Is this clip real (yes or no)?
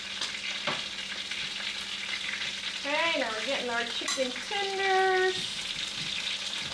yes